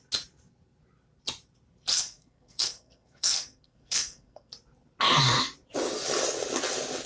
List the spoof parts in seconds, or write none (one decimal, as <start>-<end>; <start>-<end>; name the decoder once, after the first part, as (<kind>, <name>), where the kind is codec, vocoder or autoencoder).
1.9-4.5 (codec, SNAC)